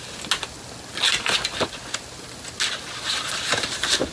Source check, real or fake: real